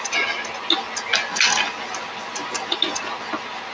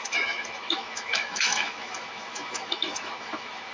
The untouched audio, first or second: first